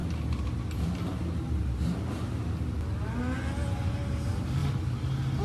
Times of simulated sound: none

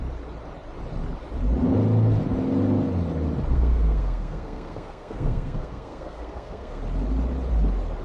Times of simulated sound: 3.5-6.8 (codec, SNAC)

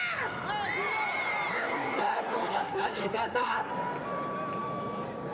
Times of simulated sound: 1.5-3.7 (codec, SNAC)

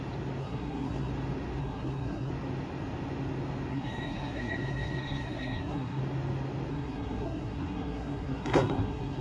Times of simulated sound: 0.4-1.1 (codec, SNAC); 1.6-2.3; 3.7-6.0; 6.7-9.2

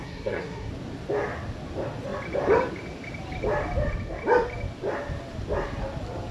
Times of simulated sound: 0.0-0.7 (codec, SNAC)

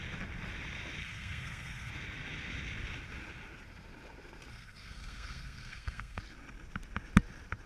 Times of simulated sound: 1.0-1.9 (codec, SNAC); 4.5-6.2

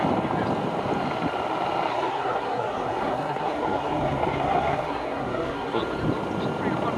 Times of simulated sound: 1.9-5.8 (codec, SNAC)